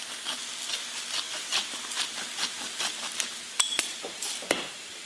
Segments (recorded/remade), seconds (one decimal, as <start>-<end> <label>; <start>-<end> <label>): 0.0-2.5 recorded; 2.5-5.1 remade